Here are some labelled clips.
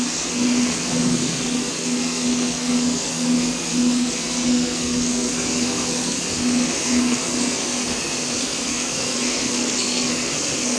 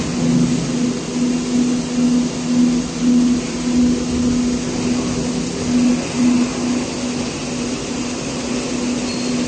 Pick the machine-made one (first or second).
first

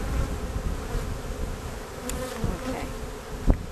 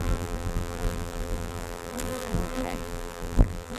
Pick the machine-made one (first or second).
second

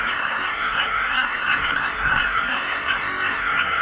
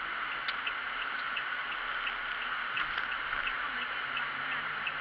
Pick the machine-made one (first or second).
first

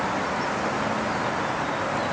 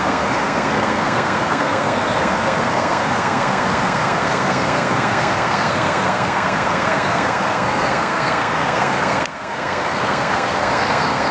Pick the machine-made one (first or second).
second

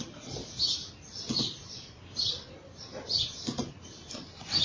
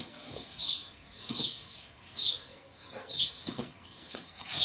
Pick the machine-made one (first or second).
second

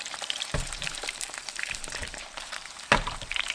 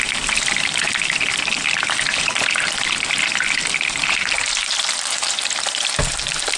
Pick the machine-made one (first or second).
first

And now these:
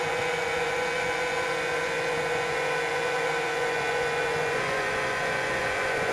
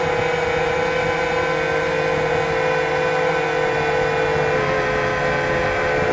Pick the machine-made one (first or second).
first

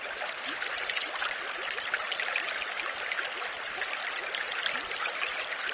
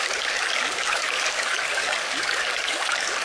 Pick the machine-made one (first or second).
second